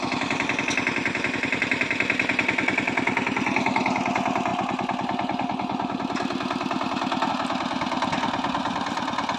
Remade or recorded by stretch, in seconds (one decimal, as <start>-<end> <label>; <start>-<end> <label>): 0.0-9.4 recorded